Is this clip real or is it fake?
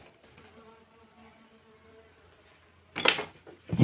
real